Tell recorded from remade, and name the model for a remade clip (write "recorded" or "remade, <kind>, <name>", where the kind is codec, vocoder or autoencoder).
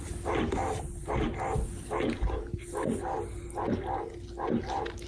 recorded